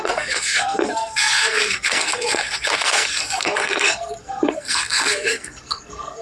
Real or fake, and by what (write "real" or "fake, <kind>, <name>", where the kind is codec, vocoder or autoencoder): fake, codec, SNAC